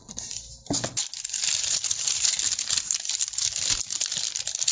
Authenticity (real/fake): real